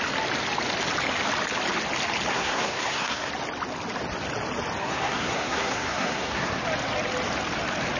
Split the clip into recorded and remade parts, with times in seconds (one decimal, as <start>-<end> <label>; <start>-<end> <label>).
0.0-2.3 recorded; 2.3-3.3 remade; 3.3-4.8 recorded; 4.8-6.6 remade; 6.6-8.0 recorded